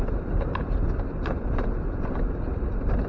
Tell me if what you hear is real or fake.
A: fake